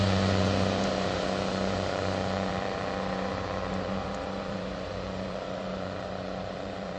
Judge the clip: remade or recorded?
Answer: remade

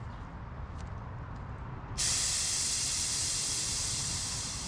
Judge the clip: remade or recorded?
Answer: recorded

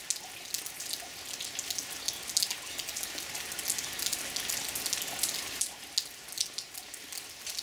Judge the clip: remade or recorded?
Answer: recorded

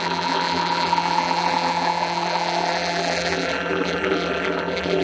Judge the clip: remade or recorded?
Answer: remade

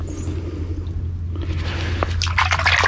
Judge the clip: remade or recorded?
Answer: recorded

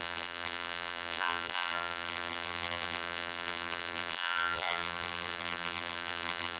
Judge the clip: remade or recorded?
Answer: remade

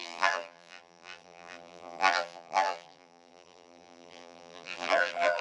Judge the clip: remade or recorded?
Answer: remade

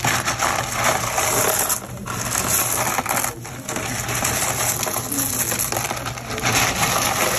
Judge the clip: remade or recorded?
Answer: recorded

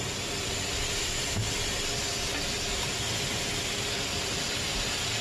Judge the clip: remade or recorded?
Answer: recorded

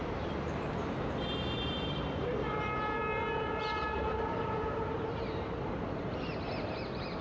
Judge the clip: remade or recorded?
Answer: remade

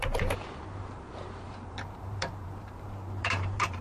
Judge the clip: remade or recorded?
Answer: remade